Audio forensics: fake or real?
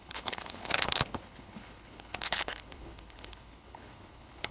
fake